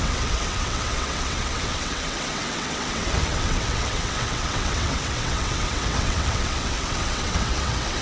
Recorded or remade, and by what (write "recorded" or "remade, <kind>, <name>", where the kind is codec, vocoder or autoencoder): remade, vocoder, WaveNeXt